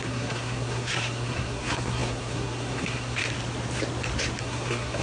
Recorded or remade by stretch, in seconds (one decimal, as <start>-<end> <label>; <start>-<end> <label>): 0.0-3.2 remade; 3.2-4.4 recorded; 4.4-5.0 remade